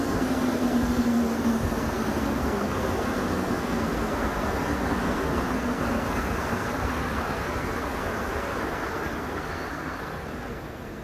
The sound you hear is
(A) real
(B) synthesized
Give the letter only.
B